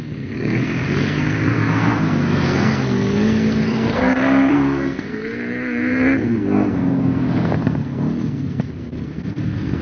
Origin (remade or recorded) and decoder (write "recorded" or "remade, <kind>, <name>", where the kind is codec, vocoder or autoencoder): remade, codec, SNAC